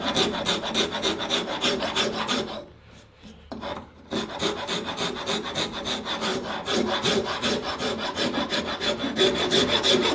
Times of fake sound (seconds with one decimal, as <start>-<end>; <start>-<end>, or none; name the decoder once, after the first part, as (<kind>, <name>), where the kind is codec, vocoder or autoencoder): 6.3-8.6 (vocoder, BigVGAN v2)